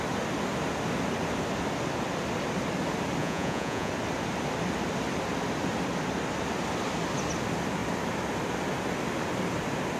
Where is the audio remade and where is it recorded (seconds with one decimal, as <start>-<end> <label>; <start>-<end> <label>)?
0.0-3.2 recorded; 3.2-3.9 remade; 3.9-10.0 recorded

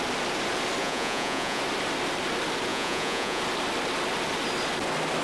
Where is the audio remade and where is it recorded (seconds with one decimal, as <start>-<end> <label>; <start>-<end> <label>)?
0.0-0.8 recorded; 0.8-1.6 remade; 1.6-2.7 recorded; 2.7-3.4 remade; 3.4-5.2 recorded

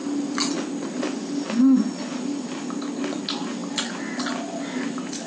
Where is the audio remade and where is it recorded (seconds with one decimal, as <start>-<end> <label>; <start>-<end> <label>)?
0.0-5.3 recorded